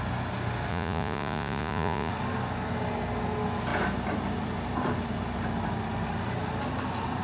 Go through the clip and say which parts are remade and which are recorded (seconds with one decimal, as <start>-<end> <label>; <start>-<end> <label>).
0.0-0.7 recorded; 0.7-2.1 remade; 2.1-7.2 recorded